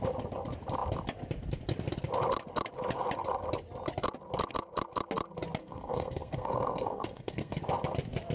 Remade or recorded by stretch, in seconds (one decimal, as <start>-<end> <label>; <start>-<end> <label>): 0.0-5.6 recorded; 5.6-7.6 remade; 7.6-8.3 recorded